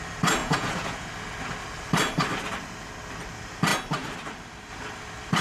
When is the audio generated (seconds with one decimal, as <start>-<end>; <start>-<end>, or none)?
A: 0.4-1.1